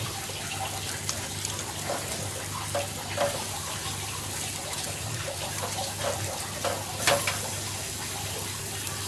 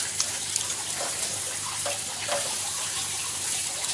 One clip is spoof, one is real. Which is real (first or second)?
first